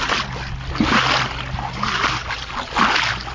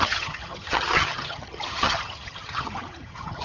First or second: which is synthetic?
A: second